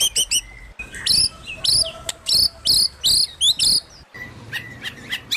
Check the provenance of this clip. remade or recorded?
recorded